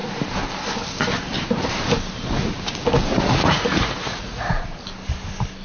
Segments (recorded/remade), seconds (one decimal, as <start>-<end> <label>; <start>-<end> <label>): 0.0-3.1 recorded; 3.1-4.8 remade; 4.8-5.6 recorded